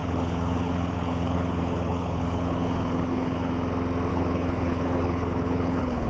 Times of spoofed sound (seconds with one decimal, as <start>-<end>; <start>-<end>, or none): 0.0-3.5; 4.1-6.1

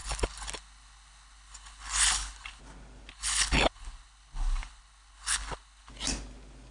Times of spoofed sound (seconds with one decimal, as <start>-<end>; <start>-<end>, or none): 0.0-2.6; 3.1-5.9

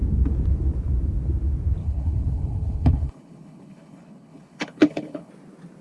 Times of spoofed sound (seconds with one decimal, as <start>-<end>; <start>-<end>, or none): 1.8-5.3

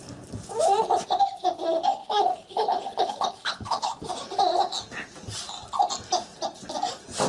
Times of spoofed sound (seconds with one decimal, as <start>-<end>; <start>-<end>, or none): 2.0-4.1

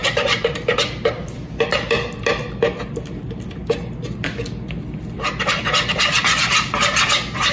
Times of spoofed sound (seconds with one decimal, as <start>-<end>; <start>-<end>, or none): none

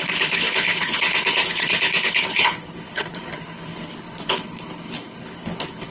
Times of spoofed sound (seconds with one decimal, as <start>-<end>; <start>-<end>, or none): 0.0-5.9